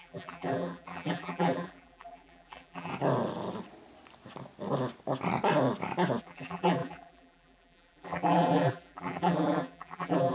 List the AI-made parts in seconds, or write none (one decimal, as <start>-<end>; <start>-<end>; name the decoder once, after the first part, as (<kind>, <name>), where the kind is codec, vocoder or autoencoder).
0.0-2.9 (vocoder, BigVGAN v2); 6.2-10.3